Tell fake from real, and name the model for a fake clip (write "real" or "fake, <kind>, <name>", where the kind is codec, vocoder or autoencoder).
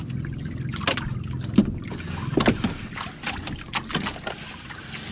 real